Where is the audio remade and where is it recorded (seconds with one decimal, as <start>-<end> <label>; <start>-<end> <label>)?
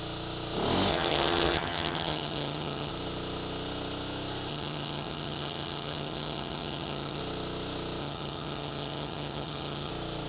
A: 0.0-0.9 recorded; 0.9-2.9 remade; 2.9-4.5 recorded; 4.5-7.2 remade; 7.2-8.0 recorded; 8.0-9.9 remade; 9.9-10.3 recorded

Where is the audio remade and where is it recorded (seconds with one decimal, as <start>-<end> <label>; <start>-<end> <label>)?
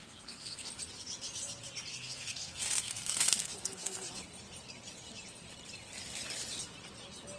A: 0.0-0.7 remade; 0.7-1.9 recorded; 1.9-4.1 remade; 4.1-7.4 recorded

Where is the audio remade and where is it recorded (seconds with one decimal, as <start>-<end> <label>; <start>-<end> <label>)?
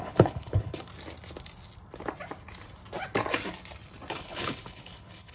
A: 0.0-0.9 remade; 0.9-4.1 recorded; 4.1-5.3 remade